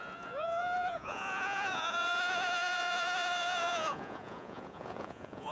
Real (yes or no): no